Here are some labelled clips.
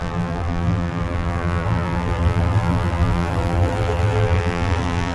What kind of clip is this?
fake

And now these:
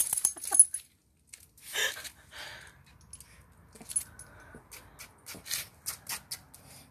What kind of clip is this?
real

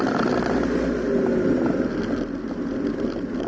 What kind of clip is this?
real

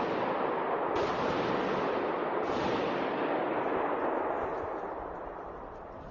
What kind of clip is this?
real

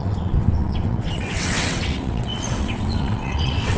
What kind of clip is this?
fake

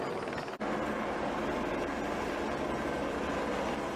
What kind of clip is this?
real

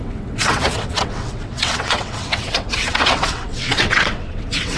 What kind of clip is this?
fake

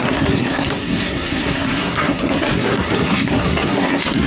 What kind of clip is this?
fake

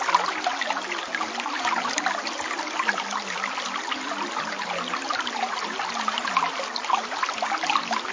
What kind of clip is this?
real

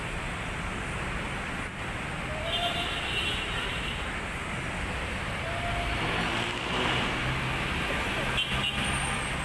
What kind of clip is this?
real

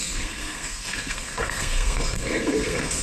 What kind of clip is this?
fake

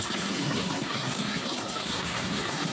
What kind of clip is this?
fake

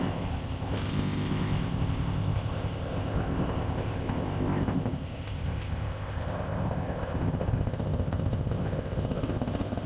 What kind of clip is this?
fake